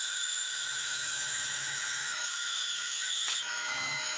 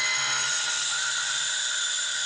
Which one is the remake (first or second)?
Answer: first